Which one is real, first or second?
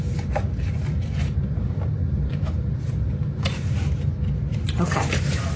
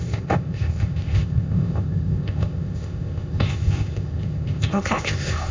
first